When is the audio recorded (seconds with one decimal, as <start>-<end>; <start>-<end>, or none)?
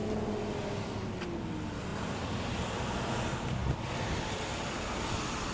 0.0-1.9; 2.5-3.6; 4.8-5.5